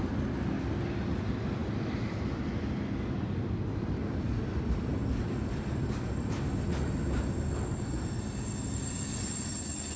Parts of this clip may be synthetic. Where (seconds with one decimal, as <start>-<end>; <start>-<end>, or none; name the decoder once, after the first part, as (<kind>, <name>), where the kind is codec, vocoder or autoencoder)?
none

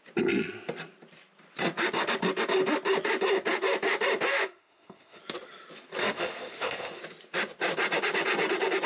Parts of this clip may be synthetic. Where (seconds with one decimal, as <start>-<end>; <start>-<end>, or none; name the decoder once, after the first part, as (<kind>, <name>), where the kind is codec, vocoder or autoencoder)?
4.3-5.2 (autoencoder, DAC-VAE); 6.0-7.0

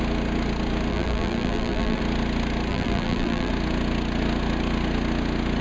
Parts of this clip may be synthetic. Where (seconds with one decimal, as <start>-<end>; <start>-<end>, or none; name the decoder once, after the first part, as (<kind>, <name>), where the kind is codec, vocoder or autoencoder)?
0.9-2.0 (vocoder, BigVGAN v2); 2.7-3.5

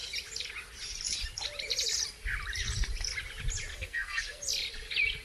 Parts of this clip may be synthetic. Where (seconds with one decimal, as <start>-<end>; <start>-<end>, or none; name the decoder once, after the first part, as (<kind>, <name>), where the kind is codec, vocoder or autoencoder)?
3.7-4.4 (codec, SNAC)

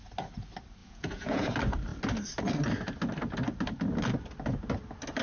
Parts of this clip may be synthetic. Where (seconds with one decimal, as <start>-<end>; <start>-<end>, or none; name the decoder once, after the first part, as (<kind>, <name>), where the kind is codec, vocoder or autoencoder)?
0.8-1.5 (vocoder, Vocos)

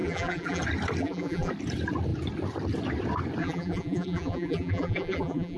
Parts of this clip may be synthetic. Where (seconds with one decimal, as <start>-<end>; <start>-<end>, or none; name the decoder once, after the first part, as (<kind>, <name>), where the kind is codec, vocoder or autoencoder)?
0.0-0.6 (vocoder, BigVGAN v2); 1.0-1.5; 3.4-5.6